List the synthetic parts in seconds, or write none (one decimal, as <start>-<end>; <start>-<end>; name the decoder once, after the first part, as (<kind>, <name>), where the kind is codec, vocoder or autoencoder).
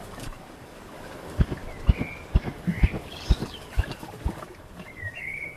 0.0-1.6 (codec, DAC); 2.3-5.6